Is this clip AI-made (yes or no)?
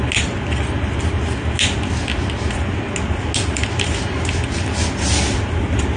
no